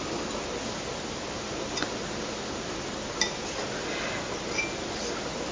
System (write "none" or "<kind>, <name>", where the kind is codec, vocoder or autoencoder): none